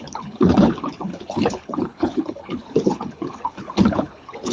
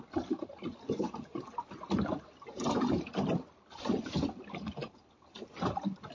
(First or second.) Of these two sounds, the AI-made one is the first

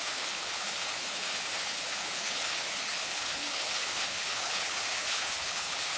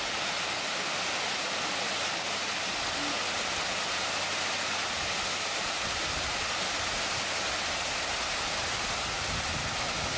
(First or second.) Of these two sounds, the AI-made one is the first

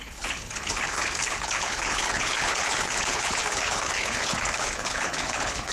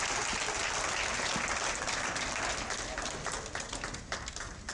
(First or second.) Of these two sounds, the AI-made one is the first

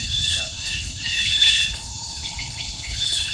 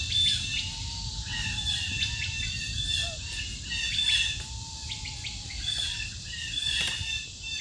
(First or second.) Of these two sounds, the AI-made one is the first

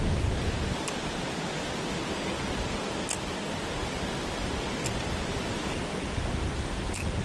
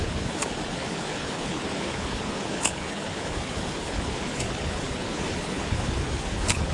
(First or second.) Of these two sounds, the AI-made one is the second